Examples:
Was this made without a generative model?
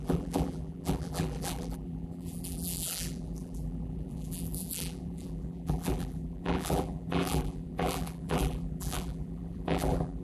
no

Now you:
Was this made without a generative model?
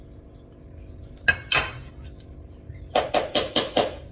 yes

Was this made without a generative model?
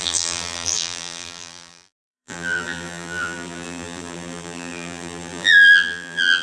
no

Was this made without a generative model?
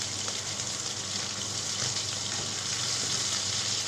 no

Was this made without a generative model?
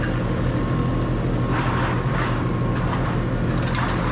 yes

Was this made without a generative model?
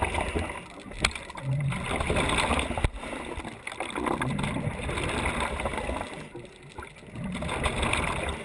yes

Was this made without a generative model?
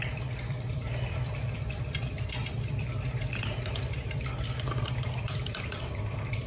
no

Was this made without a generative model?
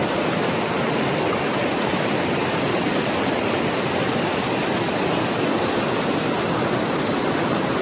no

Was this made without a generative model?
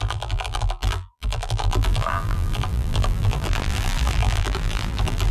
no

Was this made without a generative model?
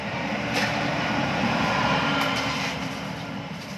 no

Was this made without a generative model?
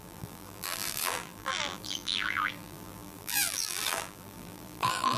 no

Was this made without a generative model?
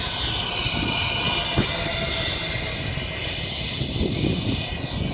yes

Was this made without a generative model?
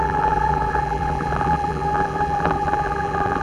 no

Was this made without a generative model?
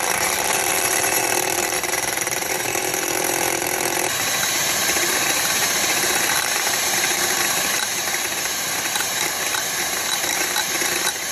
no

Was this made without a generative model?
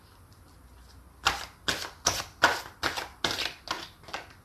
yes